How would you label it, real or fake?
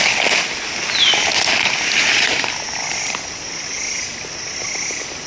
real